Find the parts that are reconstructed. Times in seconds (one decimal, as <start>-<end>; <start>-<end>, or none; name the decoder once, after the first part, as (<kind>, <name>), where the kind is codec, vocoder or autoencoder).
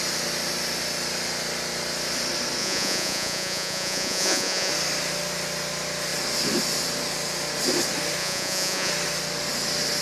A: 2.6-4.7 (vocoder, Vocos); 8.2-8.9